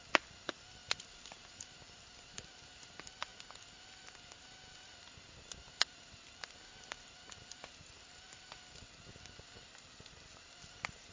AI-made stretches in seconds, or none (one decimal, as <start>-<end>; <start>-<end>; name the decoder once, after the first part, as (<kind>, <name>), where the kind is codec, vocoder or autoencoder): 0.0-0.8 (vocoder, BigVGAN v2); 2.0-3.3; 7.4-11.1